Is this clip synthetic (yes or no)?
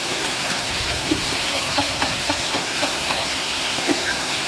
yes